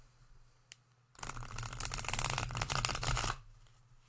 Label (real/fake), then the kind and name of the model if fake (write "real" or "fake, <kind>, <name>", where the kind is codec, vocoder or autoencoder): real